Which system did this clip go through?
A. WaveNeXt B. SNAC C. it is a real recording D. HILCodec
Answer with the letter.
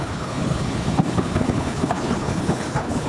D